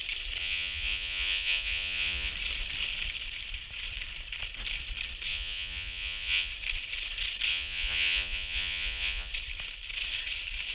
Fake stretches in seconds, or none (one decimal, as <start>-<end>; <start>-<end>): 0.4-2.3; 5.3-6.5; 7.5-9.3